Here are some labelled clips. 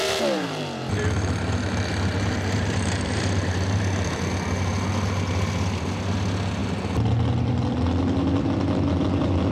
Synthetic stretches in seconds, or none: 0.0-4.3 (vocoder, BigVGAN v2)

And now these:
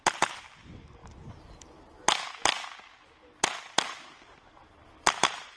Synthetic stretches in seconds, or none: 1.0-2.8 (vocoder, BigVGAN v2); 4.6-5.6

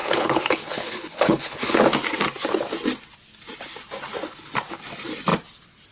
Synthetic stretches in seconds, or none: 0.0-1.8 (codec, HILCodec)

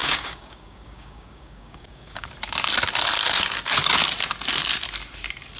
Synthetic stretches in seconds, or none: 0.0-2.3 (codec, DAC)

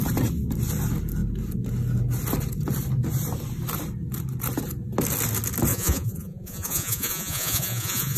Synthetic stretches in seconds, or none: 5.7-8.2 (vocoder, Vocos)